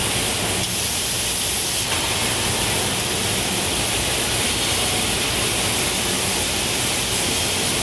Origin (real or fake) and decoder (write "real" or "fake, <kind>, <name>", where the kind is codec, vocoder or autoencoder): real